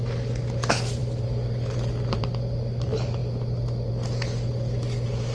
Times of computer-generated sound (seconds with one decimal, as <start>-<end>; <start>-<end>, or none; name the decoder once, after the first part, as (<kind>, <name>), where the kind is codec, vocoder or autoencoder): none